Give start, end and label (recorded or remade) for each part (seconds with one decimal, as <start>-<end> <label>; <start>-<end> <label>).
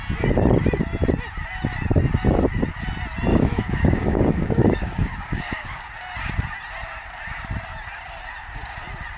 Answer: 0.0-3.3 recorded; 3.3-5.9 remade; 5.9-9.2 recorded